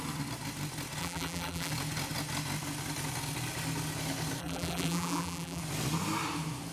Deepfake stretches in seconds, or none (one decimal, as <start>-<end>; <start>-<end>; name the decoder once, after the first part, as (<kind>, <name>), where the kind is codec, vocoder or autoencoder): 1.0-1.7 (vocoder, BigVGAN v2); 4.4-5.6

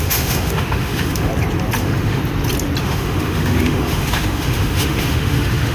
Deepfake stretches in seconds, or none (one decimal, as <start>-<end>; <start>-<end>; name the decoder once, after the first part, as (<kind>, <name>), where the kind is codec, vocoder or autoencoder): 0.0-1.3 (autoencoder, DAC-VAE); 1.8-2.2; 2.8-5.7

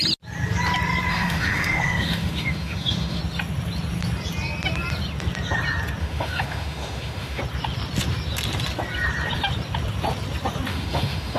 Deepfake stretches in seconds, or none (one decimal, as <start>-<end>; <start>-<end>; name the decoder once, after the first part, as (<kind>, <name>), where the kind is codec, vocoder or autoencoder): 1.1-3.2 (autoencoder, DAC-VAE); 6.0-7.4; 10.7-11.4

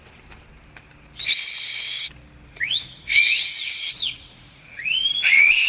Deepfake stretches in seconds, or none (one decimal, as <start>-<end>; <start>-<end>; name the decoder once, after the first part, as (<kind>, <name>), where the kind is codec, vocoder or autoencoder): 2.5-5.7 (vocoder, Vocos)

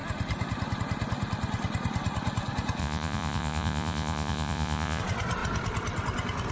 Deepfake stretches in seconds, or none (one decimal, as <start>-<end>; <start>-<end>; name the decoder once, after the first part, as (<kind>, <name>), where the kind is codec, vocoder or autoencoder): 2.8-5.0 (vocoder, Vocos)

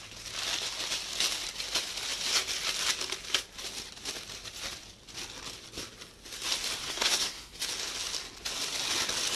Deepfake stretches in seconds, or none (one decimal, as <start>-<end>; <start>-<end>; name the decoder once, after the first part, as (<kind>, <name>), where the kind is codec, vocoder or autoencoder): 6.8-7.6 (codec, SNAC)